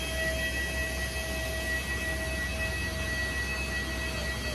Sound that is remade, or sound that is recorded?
recorded